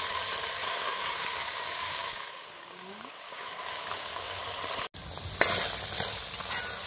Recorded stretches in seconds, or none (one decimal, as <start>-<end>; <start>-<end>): 0.0-0.6; 4.4-6.9